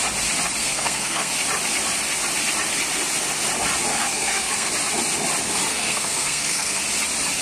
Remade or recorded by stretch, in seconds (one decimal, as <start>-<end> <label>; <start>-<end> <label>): 0.0-0.6 recorded; 0.6-1.3 remade; 1.3-3.9 recorded; 3.9-4.7 remade; 4.7-5.7 recorded; 5.7-6.8 remade; 6.8-7.4 recorded